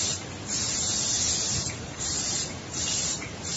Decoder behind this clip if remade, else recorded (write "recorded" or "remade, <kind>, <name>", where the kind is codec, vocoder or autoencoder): remade, vocoder, BigVGAN v2